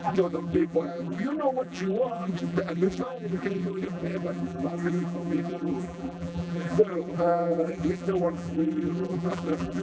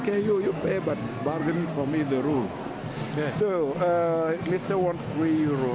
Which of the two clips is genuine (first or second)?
second